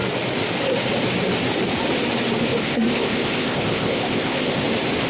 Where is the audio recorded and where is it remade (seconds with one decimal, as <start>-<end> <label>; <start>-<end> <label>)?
0.0-2.6 recorded; 2.6-4.6 remade; 4.6-5.1 recorded